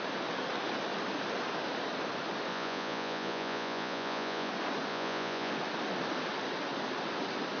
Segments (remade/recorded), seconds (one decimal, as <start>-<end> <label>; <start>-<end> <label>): 0.0-2.5 recorded; 2.5-4.5 remade; 4.5-4.9 recorded; 4.9-5.5 remade; 5.5-7.6 recorded